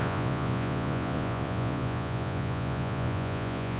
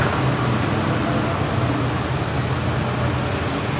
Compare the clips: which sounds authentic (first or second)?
second